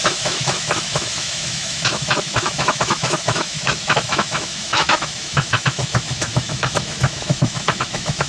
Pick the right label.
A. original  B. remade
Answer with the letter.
B